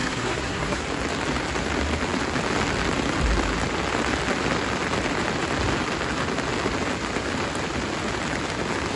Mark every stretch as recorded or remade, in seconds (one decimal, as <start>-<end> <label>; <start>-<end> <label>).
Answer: 0.0-0.8 remade; 0.8-9.0 recorded